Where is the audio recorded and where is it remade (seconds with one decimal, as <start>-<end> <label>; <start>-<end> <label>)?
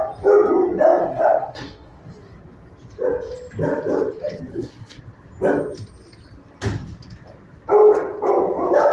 0.0-1.0 recorded; 1.0-2.0 remade; 2.0-4.5 recorded; 4.5-5.0 remade; 5.0-8.9 recorded